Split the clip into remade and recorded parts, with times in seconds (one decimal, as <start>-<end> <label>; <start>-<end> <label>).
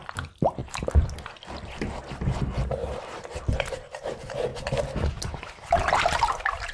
0.0-6.7 recorded